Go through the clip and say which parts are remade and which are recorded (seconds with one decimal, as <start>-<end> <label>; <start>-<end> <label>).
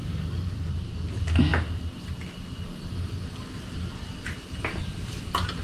0.0-0.7 remade; 0.7-5.6 recorded